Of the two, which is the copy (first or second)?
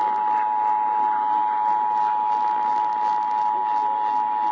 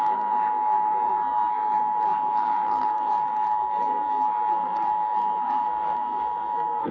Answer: second